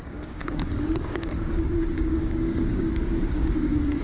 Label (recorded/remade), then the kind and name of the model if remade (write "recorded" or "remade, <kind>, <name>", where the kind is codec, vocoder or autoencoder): remade, codec, DAC